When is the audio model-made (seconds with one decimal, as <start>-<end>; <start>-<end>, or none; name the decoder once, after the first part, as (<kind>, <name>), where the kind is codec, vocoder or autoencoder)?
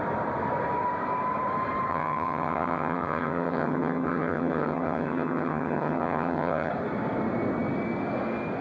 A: 1.9-6.7 (vocoder, HiFi-GAN)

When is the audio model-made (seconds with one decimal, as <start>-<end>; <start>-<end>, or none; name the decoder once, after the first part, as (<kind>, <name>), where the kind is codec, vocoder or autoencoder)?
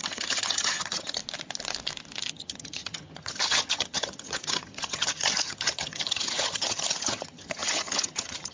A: 0.0-1.2 (vocoder, HiFi-GAN); 2.3-8.5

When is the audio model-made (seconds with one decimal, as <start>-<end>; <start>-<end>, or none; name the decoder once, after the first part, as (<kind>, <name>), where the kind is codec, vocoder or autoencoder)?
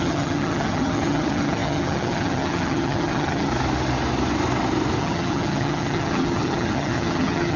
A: 0.0-3.5 (vocoder, HiFi-GAN); 5.0-7.6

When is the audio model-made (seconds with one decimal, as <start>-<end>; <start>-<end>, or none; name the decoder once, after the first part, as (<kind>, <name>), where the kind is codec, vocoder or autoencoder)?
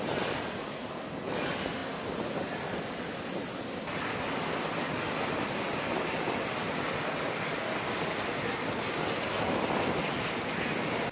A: none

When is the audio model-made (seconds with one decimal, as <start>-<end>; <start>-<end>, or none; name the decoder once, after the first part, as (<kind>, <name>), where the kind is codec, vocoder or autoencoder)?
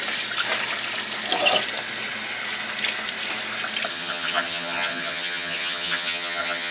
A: 3.9-6.7 (vocoder, HiFi-GAN)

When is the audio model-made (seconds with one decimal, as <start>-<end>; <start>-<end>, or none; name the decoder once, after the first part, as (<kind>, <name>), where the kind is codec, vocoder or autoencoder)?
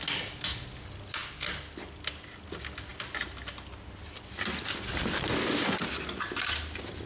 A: none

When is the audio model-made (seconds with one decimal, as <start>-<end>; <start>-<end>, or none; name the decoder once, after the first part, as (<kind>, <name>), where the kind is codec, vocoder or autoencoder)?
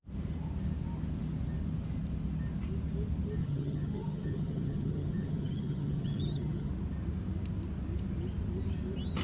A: 3.4-6.7 (vocoder, HiFi-GAN)